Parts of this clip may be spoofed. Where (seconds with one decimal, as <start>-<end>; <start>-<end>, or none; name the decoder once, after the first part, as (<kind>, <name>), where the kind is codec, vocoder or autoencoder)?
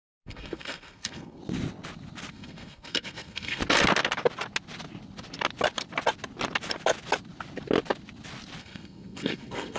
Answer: 0.0-1.4 (codec, SNAC); 2.3-3.6; 8.6-9.8